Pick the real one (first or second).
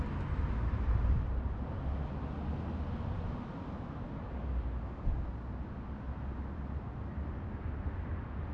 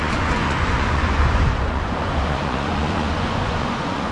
first